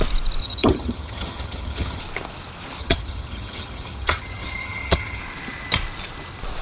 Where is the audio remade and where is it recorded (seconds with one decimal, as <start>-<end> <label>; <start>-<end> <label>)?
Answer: 0.0-0.4 recorded; 0.4-2.0 remade; 2.0-2.8 recorded; 2.8-5.2 remade; 5.2-6.6 recorded